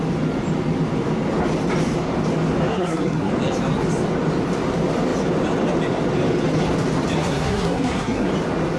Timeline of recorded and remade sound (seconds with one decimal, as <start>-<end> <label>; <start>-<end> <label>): 0.0-2.7 recorded; 2.7-3.3 remade; 3.3-7.2 recorded; 7.2-8.3 remade; 8.3-8.8 recorded